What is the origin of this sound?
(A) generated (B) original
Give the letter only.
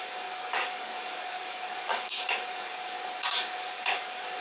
A